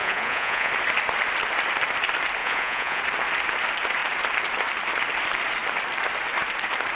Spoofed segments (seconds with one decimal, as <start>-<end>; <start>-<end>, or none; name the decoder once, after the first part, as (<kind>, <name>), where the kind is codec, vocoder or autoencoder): 0.0-0.7 (vocoder, Vocos); 2.4-3.0

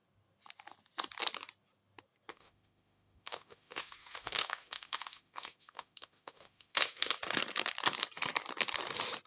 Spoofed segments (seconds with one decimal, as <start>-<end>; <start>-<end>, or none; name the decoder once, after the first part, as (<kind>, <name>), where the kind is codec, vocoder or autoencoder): 2.3-7.1 (autoencoder, DAC-VAE)